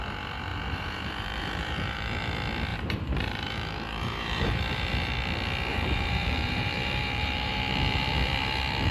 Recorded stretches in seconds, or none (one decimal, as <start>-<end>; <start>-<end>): 0.0-0.5; 2.3-2.7; 4.6-5.7; 7.6-8.9